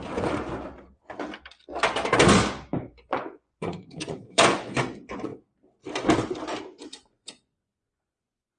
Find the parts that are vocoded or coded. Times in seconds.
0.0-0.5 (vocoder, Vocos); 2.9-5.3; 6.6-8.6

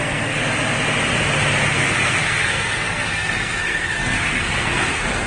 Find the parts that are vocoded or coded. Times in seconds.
0.0-0.4 (codec, SNAC); 1.7-5.3

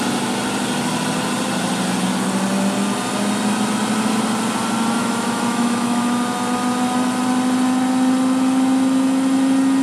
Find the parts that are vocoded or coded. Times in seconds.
5.0-6.0 (autoencoder, DAC-VAE)